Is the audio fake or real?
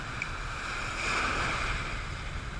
real